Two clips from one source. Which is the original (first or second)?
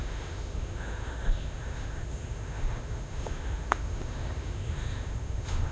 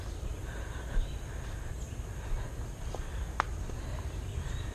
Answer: second